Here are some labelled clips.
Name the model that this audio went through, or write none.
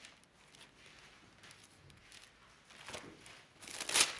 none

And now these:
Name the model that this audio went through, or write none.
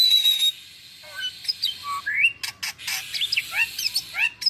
none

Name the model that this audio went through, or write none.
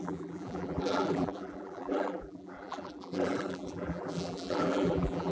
vocoder, BigVGAN v2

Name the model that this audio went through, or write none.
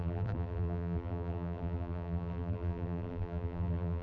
vocoder, BigVGAN v2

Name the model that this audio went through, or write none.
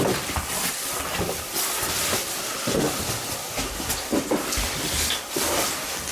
none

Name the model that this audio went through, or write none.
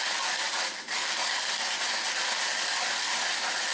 none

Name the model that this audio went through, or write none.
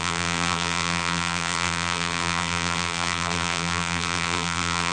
vocoder, BigVGAN v2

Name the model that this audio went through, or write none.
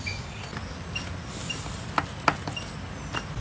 none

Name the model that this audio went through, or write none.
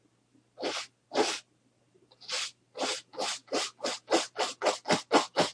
none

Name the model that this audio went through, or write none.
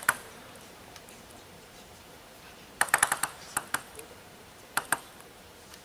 vocoder, BigVGAN v2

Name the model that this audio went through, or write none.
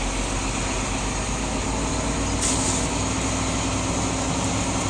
none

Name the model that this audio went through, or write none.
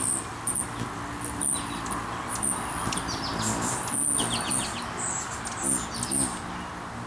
none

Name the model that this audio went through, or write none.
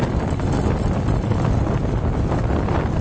none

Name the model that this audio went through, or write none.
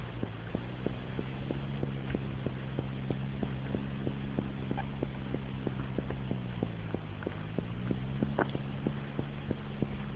none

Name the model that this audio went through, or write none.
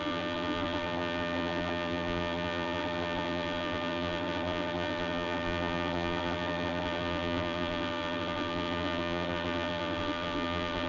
vocoder, BigVGAN v2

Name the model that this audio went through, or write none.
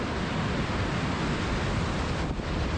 none